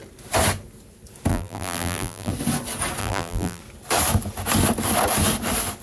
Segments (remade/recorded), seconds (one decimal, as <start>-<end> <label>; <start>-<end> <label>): 0.0-1.3 recorded; 1.3-2.3 remade; 2.3-3.0 recorded; 3.0-3.6 remade; 3.6-5.8 recorded